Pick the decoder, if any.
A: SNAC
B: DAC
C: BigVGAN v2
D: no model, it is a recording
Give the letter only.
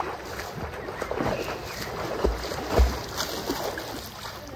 D